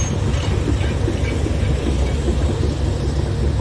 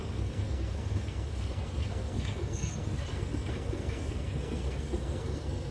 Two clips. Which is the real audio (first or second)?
first